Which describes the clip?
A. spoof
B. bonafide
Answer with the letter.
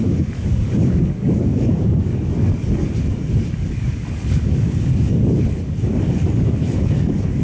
A